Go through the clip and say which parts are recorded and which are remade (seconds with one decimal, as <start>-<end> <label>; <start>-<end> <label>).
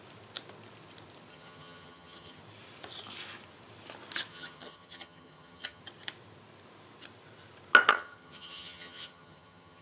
0.0-1.3 recorded; 1.3-2.4 remade; 2.4-4.3 recorded; 4.3-5.8 remade; 5.8-7.9 recorded; 7.9-9.8 remade